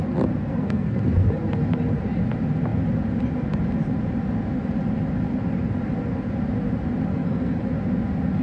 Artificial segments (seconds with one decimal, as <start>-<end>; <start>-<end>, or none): 0.4-1.3; 7.1-7.6